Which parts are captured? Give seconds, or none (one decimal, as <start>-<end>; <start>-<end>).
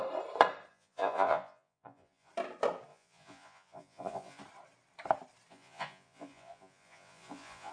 0.0-0.7; 2.3-2.9; 4.4-5.5